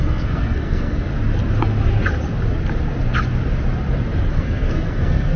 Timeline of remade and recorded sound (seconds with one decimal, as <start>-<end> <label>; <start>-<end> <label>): 0.0-1.1 remade; 1.1-4.3 recorded; 4.3-5.4 remade